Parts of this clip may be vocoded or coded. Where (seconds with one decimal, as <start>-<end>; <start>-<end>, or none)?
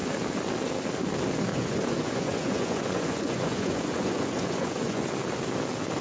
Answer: 1.5-5.1